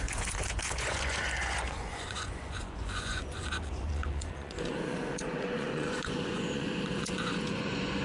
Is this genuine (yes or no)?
no